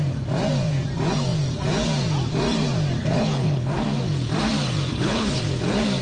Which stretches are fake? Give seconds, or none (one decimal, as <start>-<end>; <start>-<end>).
3.0-3.8; 4.9-5.4